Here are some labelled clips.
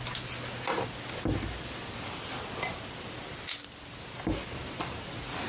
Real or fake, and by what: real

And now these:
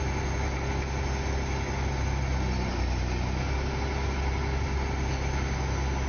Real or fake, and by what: real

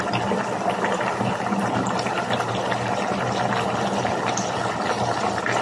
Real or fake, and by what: real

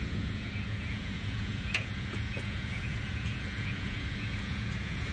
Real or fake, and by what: fake, vocoder, Vocos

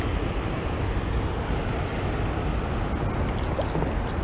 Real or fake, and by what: real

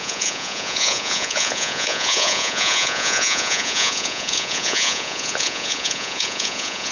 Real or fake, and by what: fake, vocoder, Vocos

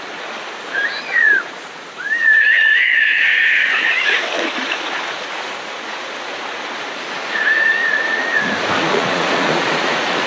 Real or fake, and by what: fake, vocoder, Vocos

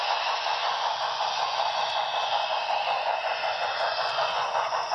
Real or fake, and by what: fake, vocoder, Vocos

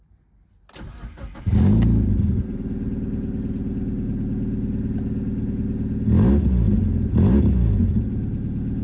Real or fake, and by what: real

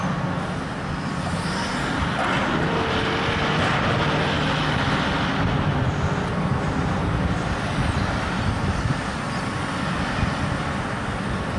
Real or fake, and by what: real